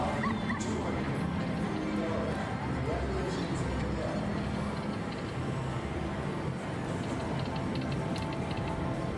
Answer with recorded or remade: recorded